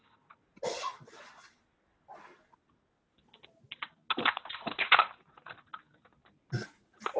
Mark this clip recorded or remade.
recorded